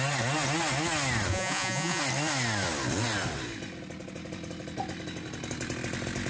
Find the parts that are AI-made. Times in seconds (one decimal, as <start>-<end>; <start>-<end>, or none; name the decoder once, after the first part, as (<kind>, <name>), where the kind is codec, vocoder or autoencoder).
1.3-2.0 (vocoder, Vocos)